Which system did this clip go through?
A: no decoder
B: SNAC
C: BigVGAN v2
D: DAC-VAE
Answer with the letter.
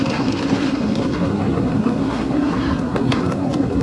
B